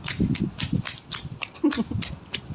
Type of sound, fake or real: real